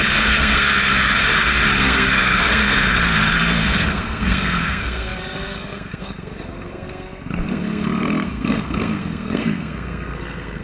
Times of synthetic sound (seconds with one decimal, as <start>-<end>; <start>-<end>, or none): 0.0-1.2; 1.8-10.6